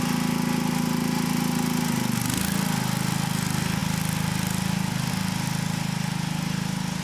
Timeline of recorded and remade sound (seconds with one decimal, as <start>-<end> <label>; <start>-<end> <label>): 0.0-7.0 recorded